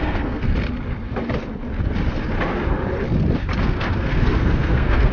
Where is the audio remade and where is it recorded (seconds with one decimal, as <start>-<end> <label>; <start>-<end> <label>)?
0.0-0.5 remade; 0.5-3.6 recorded; 3.6-5.1 remade